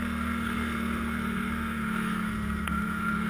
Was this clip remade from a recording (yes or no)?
yes